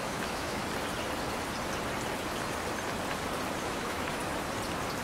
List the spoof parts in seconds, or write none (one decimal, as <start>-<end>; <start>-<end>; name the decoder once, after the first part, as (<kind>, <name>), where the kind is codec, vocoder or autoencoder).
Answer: 0.0-0.6 (autoencoder, DAC-VAE); 3.6-4.2